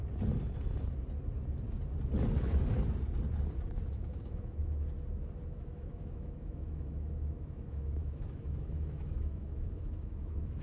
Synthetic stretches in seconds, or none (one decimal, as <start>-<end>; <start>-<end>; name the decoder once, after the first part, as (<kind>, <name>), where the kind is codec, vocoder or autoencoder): 3.9-4.6 (autoencoder, DAC-VAE); 5.4-10.6